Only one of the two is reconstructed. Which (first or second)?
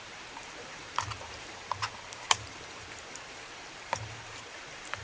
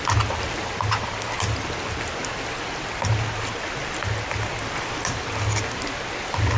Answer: first